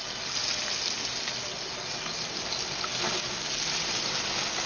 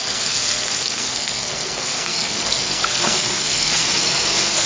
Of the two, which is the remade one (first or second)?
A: second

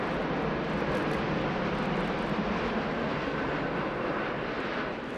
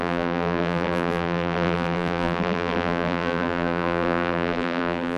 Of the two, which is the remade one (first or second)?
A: second